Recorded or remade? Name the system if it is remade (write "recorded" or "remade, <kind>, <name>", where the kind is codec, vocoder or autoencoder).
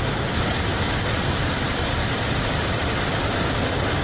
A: remade, vocoder, BigVGAN v2